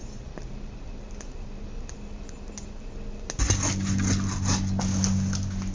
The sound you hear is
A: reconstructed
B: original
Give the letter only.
B